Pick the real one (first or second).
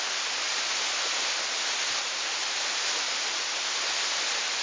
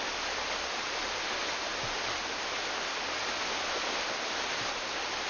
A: first